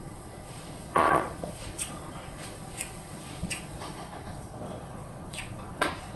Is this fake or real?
fake